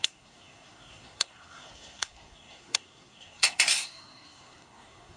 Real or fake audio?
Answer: fake